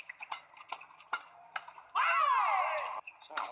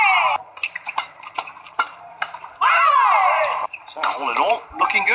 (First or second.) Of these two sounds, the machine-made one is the second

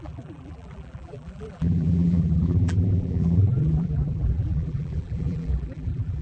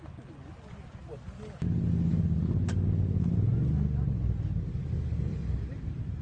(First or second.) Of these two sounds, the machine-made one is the first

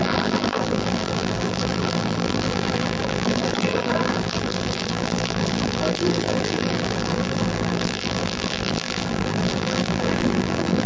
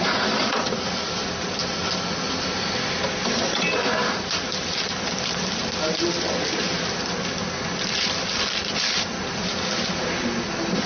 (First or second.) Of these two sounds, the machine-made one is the first